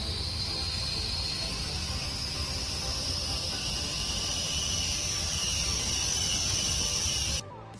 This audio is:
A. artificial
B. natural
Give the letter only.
B